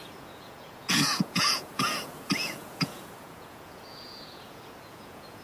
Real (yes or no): no